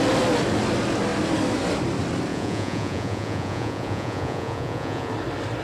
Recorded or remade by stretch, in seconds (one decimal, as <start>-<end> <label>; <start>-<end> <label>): 0.0-2.3 recorded; 2.3-5.1 remade; 5.1-5.6 recorded